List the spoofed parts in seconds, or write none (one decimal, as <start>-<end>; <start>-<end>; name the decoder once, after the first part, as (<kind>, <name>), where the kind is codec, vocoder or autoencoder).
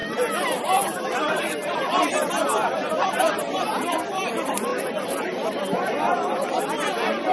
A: none